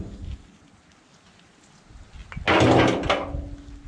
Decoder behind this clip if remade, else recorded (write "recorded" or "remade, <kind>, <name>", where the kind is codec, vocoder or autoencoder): recorded